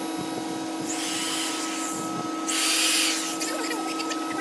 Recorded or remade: recorded